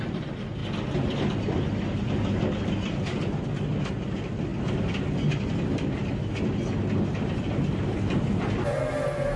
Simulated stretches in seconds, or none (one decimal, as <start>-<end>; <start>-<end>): none